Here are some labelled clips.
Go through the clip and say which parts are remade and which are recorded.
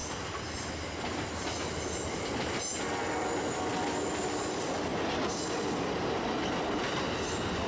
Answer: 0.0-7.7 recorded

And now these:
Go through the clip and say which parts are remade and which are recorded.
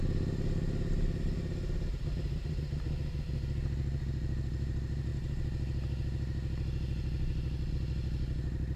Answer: 0.0-8.8 recorded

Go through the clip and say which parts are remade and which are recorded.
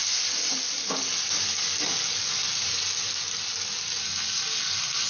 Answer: 0.0-4.0 recorded; 4.0-5.1 remade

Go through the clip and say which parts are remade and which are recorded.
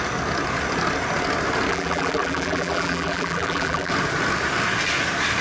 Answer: 0.0-1.7 recorded; 1.7-3.9 remade; 3.9-5.4 recorded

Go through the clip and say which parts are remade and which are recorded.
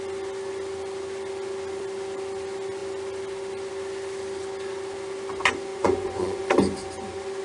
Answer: 0.0-5.7 recorded; 5.7-6.4 remade; 6.4-7.4 recorded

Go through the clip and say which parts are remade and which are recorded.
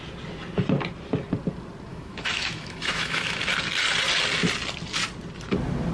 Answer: 0.0-1.9 recorded; 1.9-3.4 remade; 3.4-5.9 recorded